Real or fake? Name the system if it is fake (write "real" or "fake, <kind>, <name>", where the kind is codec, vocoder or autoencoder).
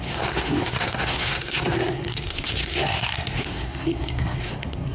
fake, codec, SNAC